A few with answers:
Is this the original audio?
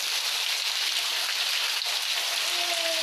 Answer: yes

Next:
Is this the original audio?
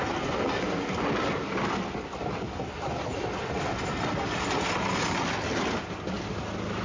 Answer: yes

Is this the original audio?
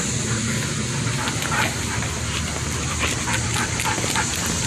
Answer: yes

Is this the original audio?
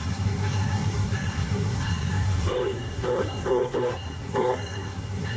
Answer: no